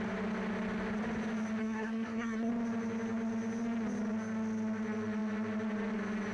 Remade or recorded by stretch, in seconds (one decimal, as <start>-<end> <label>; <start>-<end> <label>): 0.0-1.6 recorded; 1.6-2.5 remade; 2.5-6.3 recorded